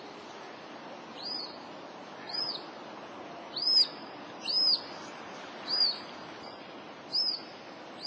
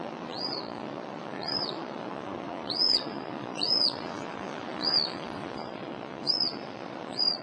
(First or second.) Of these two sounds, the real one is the first